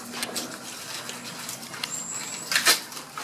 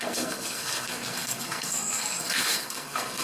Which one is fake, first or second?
second